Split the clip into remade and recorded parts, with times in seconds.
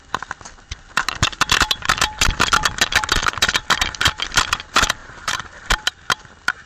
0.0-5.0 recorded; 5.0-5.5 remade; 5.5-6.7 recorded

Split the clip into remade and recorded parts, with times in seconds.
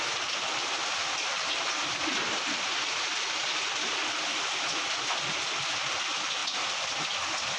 0.0-0.8 recorded; 0.8-5.2 remade; 5.2-6.4 recorded; 6.4-7.0 remade; 7.0-7.6 recorded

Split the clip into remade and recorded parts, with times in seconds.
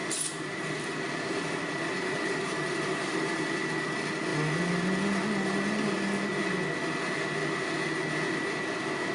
0.0-3.4 remade; 3.4-9.1 recorded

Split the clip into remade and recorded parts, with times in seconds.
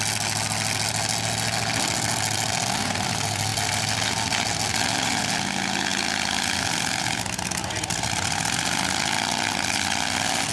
0.0-10.5 recorded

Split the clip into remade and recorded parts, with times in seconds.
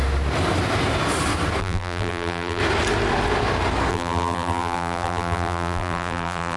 0.0-1.6 recorded; 1.6-2.6 remade; 2.6-3.9 recorded; 3.9-6.6 remade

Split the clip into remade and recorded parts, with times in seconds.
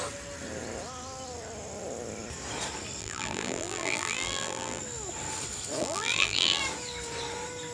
0.0-3.0 recorded; 3.0-4.8 remade; 4.8-5.8 recorded; 5.8-6.6 remade; 6.6-7.7 recorded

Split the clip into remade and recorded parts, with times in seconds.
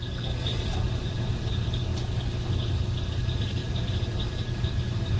0.0-0.5 recorded; 0.5-1.1 remade; 1.1-5.2 recorded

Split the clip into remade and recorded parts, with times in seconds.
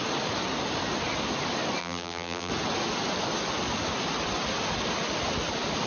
0.0-1.8 recorded; 1.8-2.5 remade; 2.5-5.9 recorded